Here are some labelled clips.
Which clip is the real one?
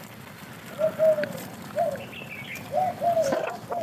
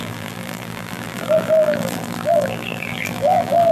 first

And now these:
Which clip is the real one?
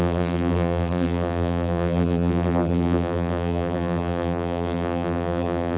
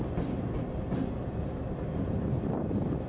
second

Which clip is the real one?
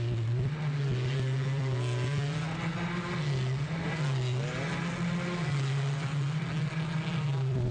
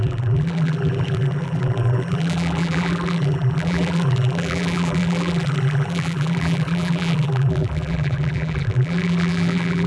first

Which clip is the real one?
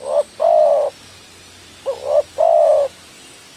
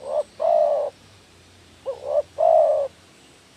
first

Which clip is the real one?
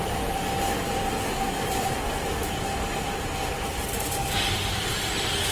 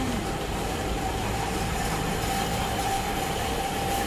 first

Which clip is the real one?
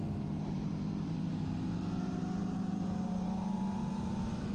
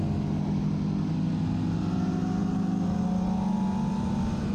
second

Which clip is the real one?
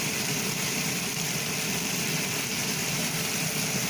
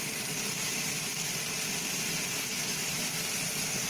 second